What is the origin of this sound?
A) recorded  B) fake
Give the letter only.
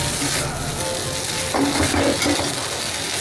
A